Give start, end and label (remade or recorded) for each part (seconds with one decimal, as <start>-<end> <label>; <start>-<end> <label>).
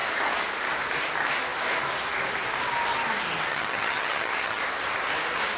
0.0-3.5 recorded; 3.5-4.6 remade; 4.6-5.6 recorded